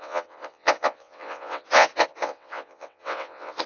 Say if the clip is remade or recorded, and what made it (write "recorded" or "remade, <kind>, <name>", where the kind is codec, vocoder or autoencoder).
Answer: remade, vocoder, WaveNeXt